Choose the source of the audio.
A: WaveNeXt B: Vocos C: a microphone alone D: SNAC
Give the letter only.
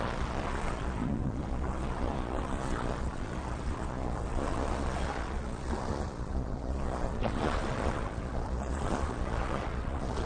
B